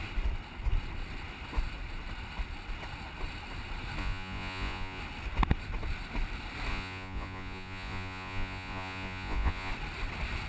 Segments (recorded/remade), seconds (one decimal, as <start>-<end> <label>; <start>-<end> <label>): 0.0-4.0 recorded; 4.0-5.0 remade; 5.0-6.7 recorded; 6.7-9.7 remade; 9.7-10.5 recorded

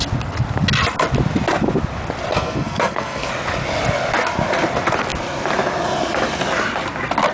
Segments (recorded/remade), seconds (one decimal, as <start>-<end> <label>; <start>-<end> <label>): 0.0-2.3 recorded; 2.3-3.3 remade; 3.3-7.3 recorded

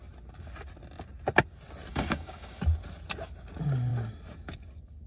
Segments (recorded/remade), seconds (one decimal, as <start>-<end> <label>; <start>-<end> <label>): 0.0-1.9 recorded; 1.9-2.6 remade; 2.6-5.1 recorded

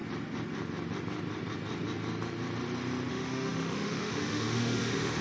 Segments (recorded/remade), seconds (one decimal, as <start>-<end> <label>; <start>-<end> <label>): 0.0-3.1 recorded; 3.1-5.2 remade

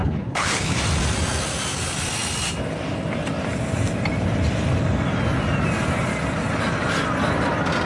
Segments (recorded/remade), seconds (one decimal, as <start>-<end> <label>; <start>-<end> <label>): 0.0-0.8 remade; 0.8-7.9 recorded